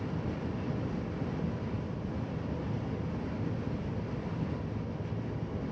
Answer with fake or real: real